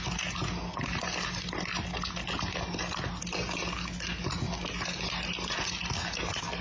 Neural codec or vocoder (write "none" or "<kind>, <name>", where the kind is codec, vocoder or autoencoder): none